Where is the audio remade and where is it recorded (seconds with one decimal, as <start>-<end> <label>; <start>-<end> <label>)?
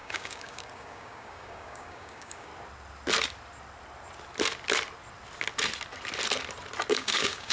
0.0-2.5 remade; 2.5-6.9 recorded; 6.9-7.5 remade